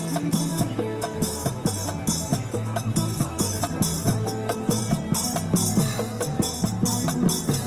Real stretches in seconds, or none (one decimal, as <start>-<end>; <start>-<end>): 0.0-0.5; 1.7-2.3; 3.6-4.0; 4.8-7.7